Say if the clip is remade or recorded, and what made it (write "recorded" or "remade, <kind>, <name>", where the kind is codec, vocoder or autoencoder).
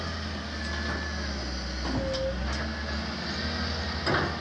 recorded